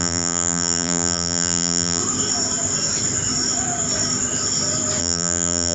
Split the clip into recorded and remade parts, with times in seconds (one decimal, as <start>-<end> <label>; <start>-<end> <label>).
0.0-2.0 remade; 2.0-5.0 recorded; 5.0-5.7 remade